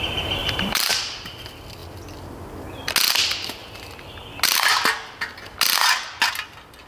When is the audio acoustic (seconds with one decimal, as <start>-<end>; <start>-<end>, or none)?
0.0-0.4; 0.9-6.9

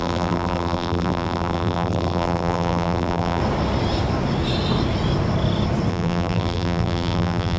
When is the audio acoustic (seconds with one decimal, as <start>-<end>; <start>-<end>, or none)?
3.4-5.9

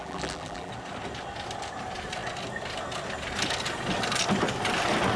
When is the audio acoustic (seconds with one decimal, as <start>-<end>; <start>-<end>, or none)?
0.7-5.2

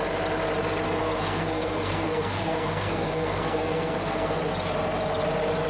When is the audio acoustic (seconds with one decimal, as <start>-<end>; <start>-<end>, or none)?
0.0-1.0; 4.4-5.7